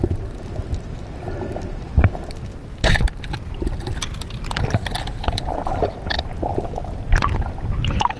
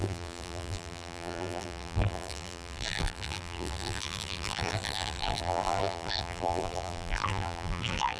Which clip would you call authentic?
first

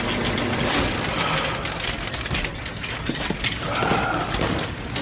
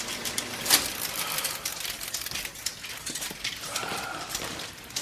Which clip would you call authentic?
first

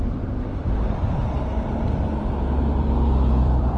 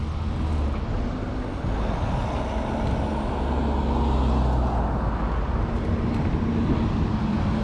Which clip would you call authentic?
second